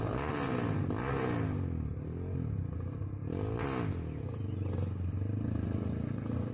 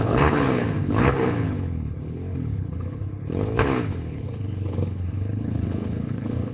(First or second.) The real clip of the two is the first